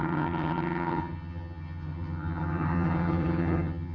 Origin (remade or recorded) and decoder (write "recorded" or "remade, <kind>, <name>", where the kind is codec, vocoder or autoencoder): remade, vocoder, HiFi-GAN